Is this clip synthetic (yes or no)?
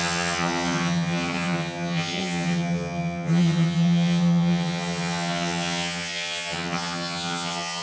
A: yes